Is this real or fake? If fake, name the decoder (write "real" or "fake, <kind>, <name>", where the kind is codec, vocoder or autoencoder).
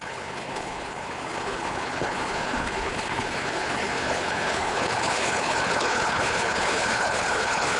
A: fake, codec, HILCodec